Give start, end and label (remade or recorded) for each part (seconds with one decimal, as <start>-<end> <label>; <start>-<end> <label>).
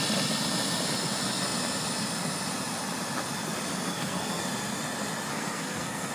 0.0-3.7 recorded; 3.7-4.4 remade; 4.4-5.3 recorded; 5.3-6.1 remade